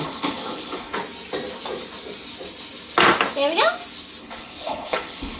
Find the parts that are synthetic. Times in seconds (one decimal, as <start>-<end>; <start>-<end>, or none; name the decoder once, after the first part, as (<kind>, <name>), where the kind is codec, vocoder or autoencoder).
0.0-1.0 (codec, HILCodec); 4.2-5.4